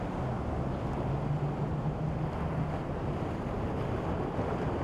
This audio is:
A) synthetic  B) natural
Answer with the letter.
B